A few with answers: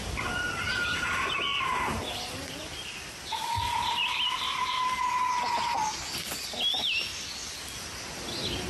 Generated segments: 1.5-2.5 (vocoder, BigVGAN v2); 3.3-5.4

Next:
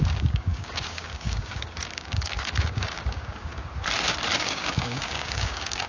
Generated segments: 0.0-3.5 (codec, DAC); 4.4-5.9

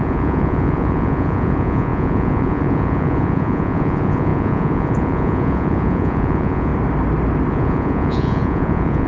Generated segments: 0.0-6.7 (vocoder, Vocos); 7.5-9.1

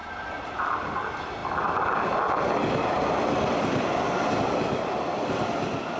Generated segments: none

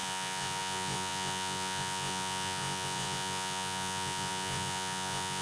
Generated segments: 0.0-5.4 (vocoder, Vocos)

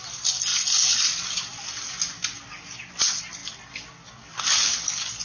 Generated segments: 3.4-4.1 (vocoder, BigVGAN v2)